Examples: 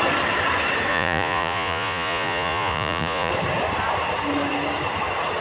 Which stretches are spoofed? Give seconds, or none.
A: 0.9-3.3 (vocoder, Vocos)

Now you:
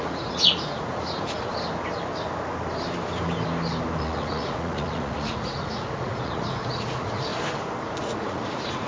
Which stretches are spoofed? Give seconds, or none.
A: 0.0-1.5 (vocoder, Vocos); 4.0-7.3; 8.0-8.9

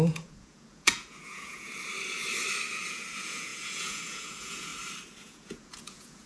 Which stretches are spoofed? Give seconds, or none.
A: 0.0-1.7 (vocoder, Vocos); 2.7-4.7; 5.2-6.3

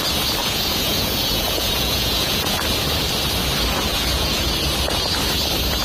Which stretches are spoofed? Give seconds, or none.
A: 0.4-2.6 (vocoder, Vocos); 3.9-4.5

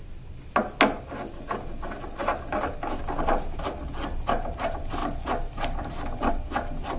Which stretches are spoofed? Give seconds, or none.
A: none